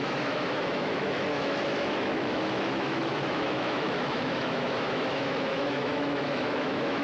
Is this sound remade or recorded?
remade